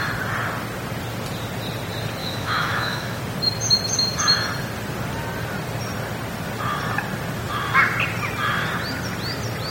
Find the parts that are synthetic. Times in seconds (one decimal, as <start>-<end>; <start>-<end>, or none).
2.2-3.2